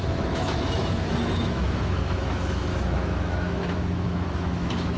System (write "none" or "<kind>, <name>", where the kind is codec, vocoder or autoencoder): autoencoder, DAC-VAE